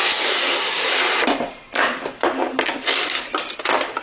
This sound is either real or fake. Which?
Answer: real